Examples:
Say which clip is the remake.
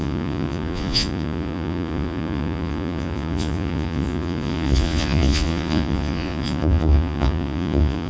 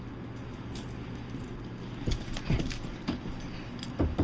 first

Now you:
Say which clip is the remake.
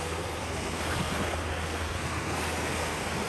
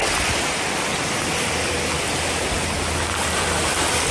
first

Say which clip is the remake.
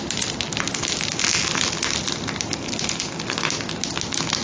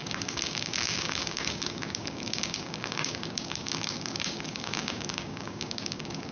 second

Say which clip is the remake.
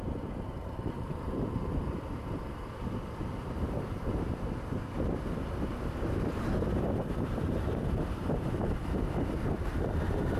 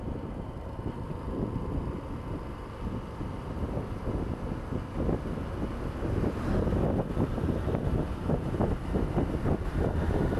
first